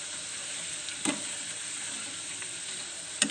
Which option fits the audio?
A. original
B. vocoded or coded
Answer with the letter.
A